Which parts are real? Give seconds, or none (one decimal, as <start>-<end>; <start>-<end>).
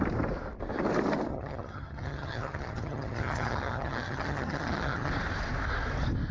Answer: 0.0-1.3; 5.1-6.3